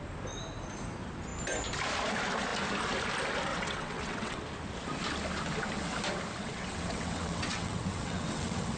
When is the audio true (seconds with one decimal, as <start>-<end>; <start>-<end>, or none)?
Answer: 0.0-3.5; 4.4-6.4